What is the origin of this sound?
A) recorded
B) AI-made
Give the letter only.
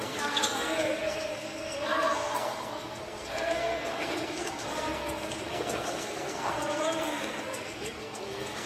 B